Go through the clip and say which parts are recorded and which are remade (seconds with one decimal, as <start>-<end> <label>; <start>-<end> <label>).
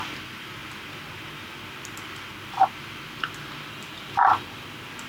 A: 0.0-5.1 recorded